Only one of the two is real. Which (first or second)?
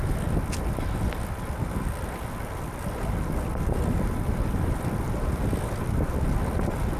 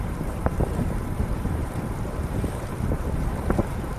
first